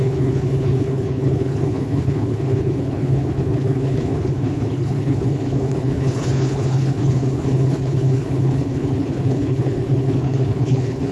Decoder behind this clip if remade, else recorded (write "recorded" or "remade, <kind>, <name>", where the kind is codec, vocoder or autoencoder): remade, codec, HILCodec